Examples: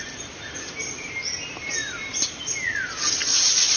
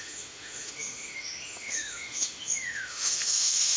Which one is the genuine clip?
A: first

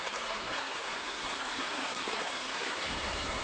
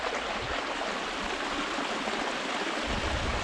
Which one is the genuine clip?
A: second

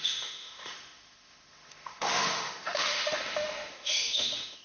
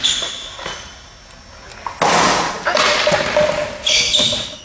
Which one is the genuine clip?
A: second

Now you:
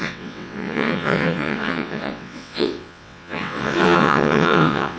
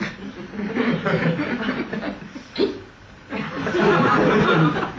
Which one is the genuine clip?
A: second